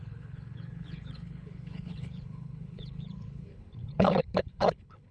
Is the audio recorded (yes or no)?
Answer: no